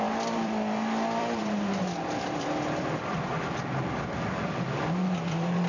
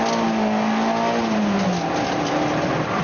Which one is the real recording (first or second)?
second